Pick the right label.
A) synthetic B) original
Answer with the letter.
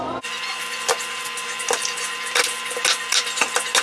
B